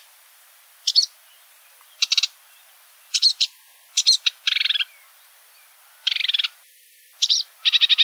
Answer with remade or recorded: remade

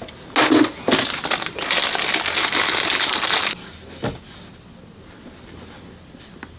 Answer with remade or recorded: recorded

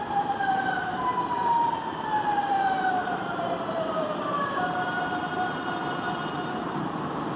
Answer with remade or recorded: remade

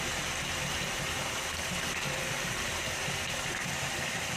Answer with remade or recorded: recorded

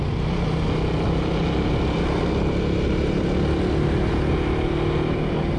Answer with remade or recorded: recorded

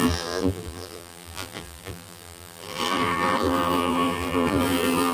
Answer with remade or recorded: remade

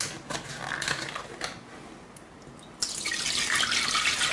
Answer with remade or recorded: recorded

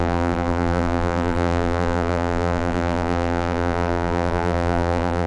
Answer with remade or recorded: remade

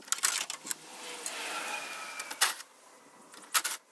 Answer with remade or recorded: recorded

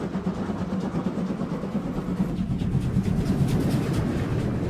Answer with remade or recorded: recorded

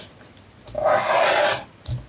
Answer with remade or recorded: recorded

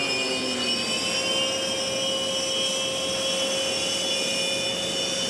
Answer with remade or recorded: recorded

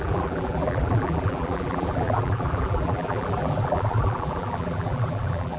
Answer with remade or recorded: remade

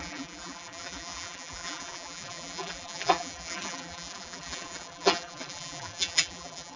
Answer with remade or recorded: remade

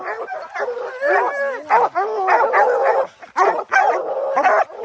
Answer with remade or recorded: recorded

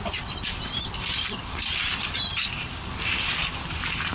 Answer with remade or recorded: remade